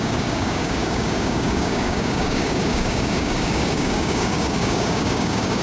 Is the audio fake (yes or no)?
yes